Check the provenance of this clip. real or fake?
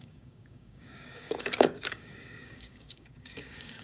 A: fake